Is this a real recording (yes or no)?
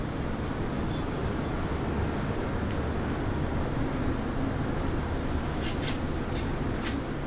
yes